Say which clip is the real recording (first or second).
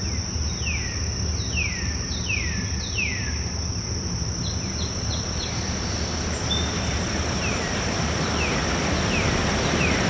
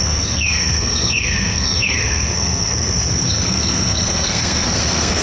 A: first